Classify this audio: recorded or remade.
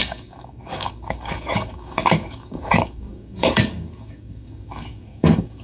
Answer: remade